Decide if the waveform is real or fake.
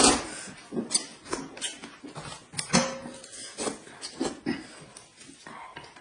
real